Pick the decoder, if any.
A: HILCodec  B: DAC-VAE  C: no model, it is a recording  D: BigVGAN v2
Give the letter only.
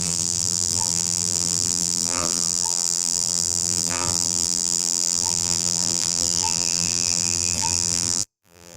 D